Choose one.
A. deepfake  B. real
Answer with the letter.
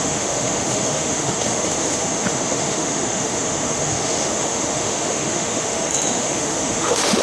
A